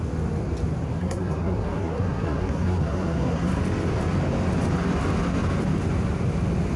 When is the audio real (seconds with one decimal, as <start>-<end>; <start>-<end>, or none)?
0.0-1.0; 3.6-6.8

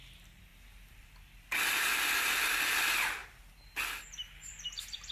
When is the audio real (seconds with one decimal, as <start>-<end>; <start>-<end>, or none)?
0.0-5.1

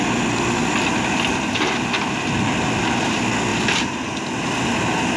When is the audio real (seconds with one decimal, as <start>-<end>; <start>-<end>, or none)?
0.0-3.5; 4.1-5.2

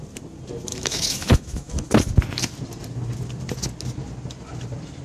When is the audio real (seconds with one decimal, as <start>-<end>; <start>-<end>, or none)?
0.0-0.7; 1.7-5.0

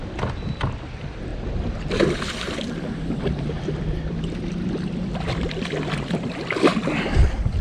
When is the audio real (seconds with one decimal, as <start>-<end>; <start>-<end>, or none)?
6.7-7.6

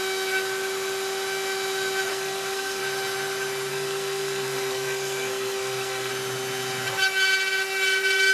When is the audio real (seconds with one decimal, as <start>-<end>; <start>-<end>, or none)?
0.0-2.1; 2.8-3.7; 6.1-8.3

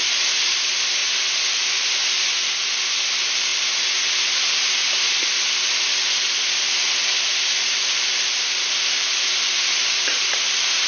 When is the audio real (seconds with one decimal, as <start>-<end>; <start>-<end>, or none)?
3.5-4.6

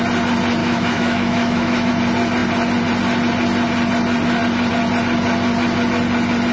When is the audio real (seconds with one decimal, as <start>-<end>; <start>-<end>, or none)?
0.0-0.6; 1.9-6.5